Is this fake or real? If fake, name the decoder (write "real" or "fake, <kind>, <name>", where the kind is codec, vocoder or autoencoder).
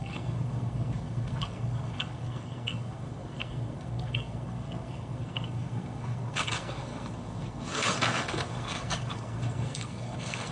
fake, codec, SNAC